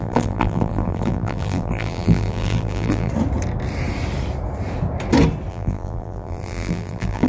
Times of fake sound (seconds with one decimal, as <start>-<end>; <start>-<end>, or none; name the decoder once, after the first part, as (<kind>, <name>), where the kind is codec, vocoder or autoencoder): 0.0-3.1 (vocoder, BigVGAN v2); 5.5-7.3